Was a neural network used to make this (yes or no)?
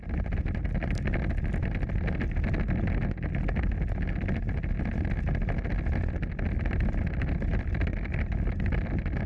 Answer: no